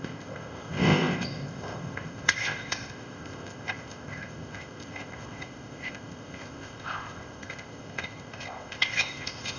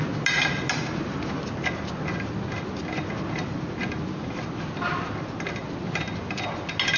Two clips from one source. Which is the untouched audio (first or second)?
second